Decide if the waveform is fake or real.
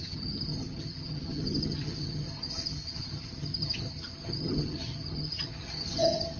fake